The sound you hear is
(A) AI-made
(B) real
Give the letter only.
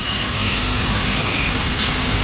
A